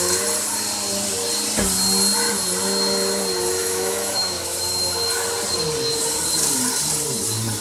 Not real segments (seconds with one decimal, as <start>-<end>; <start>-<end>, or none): 3.6-5.1